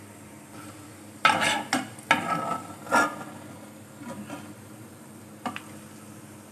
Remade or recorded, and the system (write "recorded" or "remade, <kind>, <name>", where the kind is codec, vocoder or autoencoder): recorded